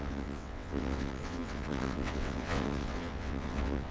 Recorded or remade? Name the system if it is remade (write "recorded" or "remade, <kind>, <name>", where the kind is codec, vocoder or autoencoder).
remade, vocoder, WaveNeXt